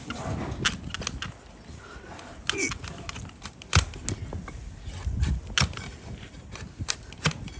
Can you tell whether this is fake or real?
real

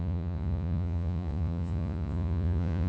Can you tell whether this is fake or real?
fake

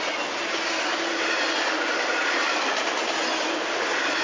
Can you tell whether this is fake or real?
real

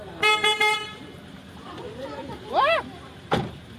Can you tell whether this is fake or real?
fake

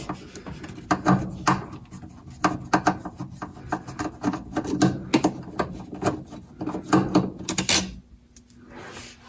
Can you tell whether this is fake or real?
real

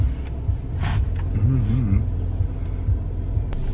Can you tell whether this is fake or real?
real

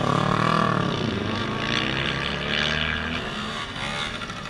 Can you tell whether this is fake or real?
real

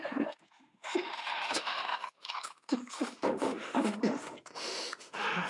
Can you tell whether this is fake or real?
fake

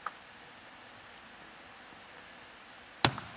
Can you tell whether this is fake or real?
real